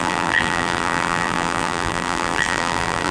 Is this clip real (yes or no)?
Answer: no